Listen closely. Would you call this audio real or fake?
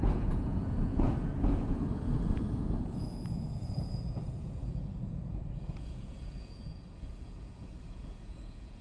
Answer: fake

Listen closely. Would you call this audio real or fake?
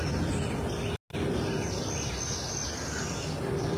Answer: real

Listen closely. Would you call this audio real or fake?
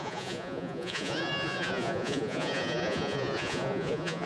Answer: fake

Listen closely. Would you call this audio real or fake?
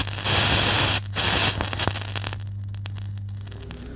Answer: real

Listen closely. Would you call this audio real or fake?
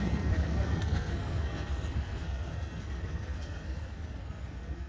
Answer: fake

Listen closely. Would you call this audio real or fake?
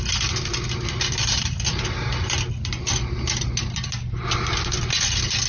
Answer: real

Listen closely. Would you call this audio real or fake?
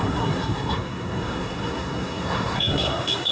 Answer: fake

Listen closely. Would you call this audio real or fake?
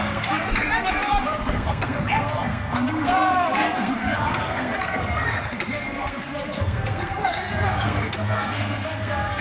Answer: fake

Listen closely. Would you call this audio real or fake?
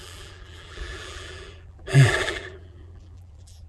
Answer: fake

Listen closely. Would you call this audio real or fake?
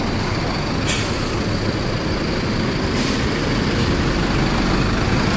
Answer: real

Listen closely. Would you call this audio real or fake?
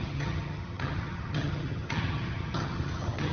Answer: fake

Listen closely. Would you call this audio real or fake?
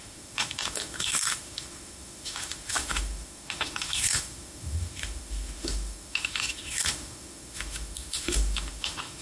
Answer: fake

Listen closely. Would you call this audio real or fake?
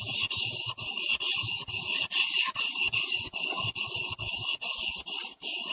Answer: real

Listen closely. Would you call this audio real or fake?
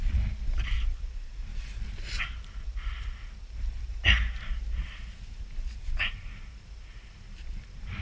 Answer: real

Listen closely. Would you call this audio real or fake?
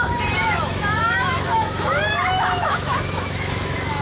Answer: fake